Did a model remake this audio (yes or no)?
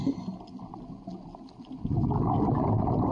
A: no